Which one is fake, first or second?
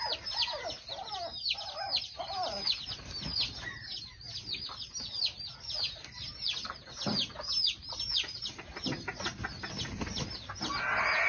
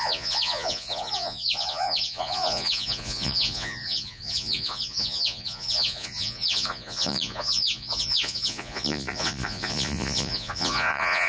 second